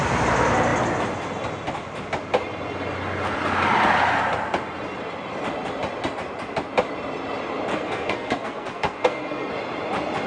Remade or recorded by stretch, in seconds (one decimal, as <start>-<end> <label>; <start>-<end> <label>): 0.0-7.7 recorded; 7.7-9.5 remade; 9.5-10.3 recorded